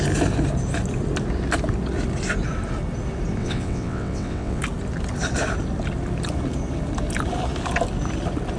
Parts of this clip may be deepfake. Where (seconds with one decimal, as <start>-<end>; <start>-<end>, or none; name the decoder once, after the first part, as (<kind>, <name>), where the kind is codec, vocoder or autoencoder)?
3.4-4.6 (vocoder, WaveNeXt)

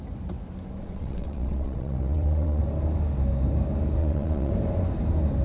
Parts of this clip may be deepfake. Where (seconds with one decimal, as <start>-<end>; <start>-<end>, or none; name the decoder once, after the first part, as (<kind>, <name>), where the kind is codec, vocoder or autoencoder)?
0.8-2.6 (vocoder, WaveNeXt); 4.0-4.5

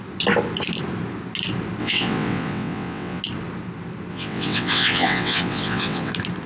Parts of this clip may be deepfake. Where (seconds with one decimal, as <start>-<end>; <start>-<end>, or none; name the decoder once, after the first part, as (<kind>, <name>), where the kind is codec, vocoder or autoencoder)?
1.8-3.2 (vocoder, WaveNeXt); 4.1-6.1

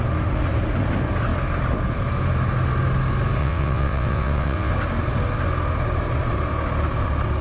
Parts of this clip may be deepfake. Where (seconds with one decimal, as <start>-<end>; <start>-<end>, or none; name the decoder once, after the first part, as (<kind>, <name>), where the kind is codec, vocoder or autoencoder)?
3.4-4.7 (vocoder, WaveNeXt)

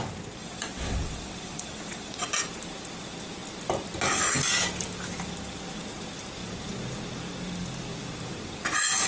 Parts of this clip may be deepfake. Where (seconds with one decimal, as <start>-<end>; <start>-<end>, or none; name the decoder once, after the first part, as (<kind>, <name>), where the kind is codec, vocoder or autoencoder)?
0.4-2.3 (vocoder, WaveNeXt)